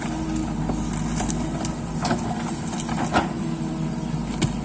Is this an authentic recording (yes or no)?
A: yes